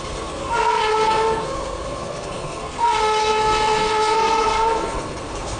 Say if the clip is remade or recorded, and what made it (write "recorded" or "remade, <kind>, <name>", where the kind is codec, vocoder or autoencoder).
remade, codec, SNAC